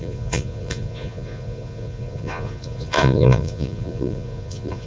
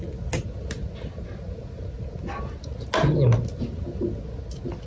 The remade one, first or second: first